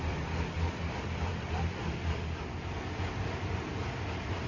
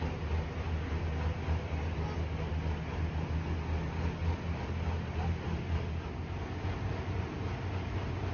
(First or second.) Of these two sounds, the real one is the second